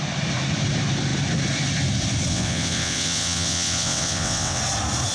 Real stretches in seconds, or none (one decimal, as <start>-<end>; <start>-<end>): 0.0-2.3; 4.6-5.1